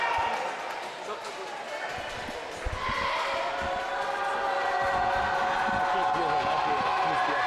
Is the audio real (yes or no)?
yes